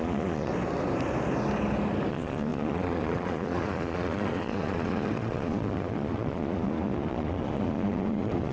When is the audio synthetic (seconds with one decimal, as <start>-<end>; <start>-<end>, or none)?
0.0-0.5; 2.1-8.5